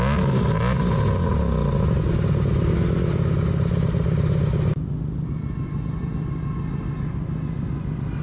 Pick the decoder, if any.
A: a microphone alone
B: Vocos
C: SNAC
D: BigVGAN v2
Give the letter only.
A